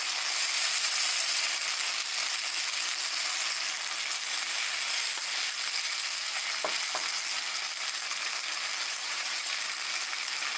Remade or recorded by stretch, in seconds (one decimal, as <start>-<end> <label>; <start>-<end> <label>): 0.0-9.0 recorded; 9.0-9.5 remade; 9.5-10.6 recorded